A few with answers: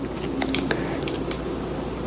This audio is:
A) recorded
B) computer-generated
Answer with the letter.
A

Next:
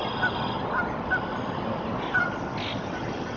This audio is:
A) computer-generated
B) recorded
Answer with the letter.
B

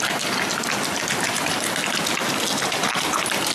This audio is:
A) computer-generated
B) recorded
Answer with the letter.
B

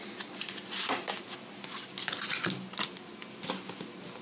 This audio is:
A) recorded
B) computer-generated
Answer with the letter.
A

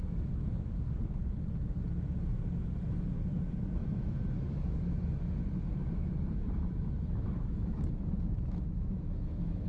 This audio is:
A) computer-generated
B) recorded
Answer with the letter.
A